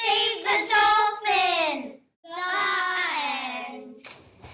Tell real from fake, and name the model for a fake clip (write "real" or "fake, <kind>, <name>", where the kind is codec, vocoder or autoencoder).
real